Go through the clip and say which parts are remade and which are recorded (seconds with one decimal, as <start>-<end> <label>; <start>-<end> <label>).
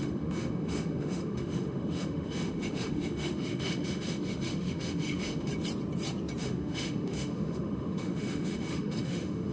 0.0-5.5 remade; 5.5-6.4 recorded; 6.4-9.5 remade